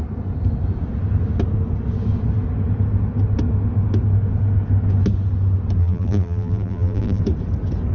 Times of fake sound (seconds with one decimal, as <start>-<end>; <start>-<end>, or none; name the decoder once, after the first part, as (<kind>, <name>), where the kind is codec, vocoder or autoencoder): 5.8-7.2 (vocoder, BigVGAN v2)